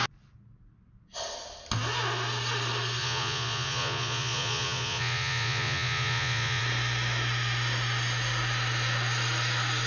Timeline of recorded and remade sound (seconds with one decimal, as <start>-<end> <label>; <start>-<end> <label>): 0.0-3.0 recorded; 3.0-6.6 remade; 6.6-9.9 recorded